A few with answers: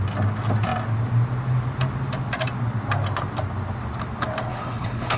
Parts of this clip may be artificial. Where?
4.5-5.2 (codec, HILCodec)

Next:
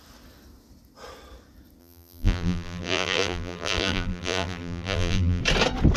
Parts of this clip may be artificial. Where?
1.8-5.4 (vocoder, BigVGAN v2)

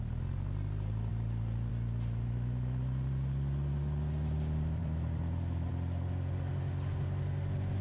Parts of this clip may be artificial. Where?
4.8-5.7 (vocoder, BigVGAN v2)

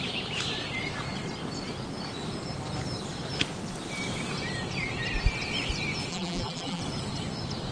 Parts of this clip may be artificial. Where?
6.1-6.8 (vocoder, BigVGAN v2)

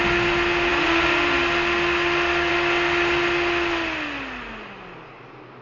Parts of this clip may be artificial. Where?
none

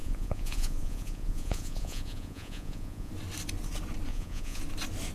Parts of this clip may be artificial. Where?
0.0-3.1 (vocoder, Vocos); 4.1-4.6

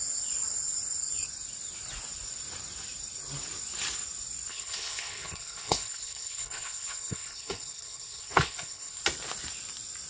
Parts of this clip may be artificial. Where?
4.5-9.0 (codec, HILCodec)